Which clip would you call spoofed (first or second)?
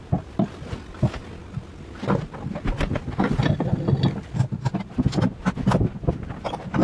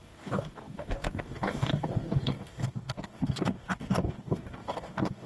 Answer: second